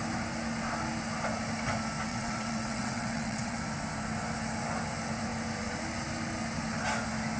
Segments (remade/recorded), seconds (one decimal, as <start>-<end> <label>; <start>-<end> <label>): 0.0-2.1 recorded; 2.1-3.6 remade; 3.6-7.4 recorded